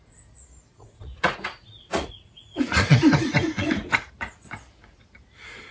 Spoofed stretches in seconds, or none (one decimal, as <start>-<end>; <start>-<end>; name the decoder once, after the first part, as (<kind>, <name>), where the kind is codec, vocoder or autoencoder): 0.7-4.1 (vocoder, Vocos)